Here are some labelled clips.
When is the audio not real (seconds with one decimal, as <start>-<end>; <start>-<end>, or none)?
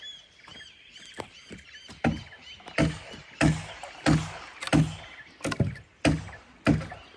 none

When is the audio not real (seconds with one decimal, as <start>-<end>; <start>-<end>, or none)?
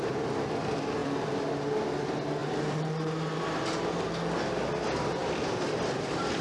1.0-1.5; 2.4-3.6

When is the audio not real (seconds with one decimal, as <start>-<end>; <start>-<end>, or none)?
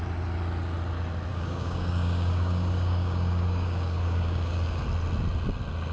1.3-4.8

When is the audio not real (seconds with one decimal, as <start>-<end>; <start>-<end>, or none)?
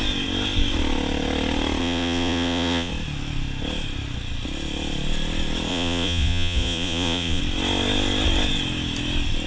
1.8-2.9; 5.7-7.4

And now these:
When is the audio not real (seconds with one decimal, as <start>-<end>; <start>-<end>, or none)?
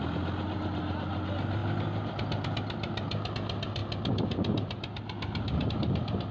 none